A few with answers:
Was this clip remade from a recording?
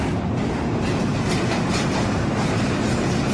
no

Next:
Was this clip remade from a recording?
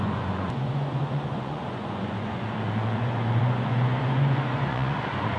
yes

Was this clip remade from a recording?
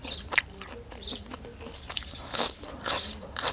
no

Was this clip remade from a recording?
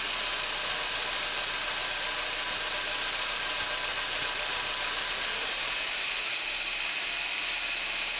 no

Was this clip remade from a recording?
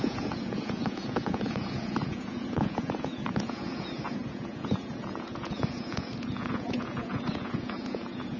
yes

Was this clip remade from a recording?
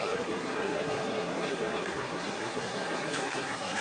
yes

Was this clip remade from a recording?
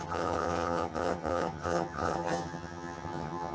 yes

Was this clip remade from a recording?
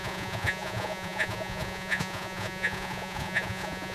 yes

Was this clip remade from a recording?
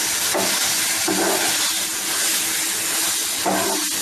no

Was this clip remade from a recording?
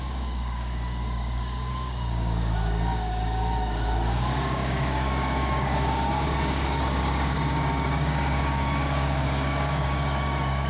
yes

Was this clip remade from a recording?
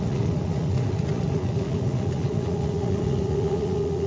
yes